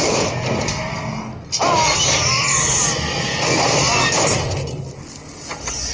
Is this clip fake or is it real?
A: real